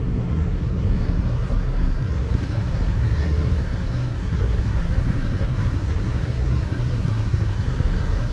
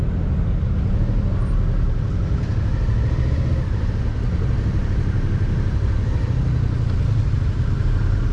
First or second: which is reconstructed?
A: first